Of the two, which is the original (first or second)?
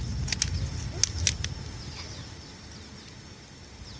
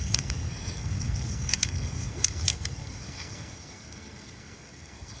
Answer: first